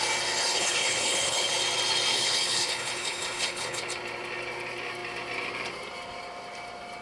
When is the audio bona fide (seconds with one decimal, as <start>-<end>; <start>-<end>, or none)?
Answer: 0.0-0.4; 1.5-2.1; 3.8-7.0